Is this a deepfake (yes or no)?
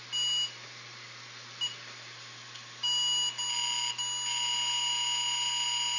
no